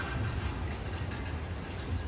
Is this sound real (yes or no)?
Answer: yes